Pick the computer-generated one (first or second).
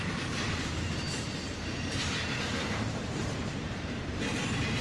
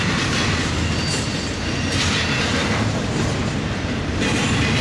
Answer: first